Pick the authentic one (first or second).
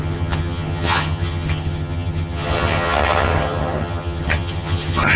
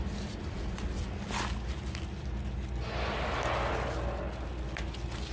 second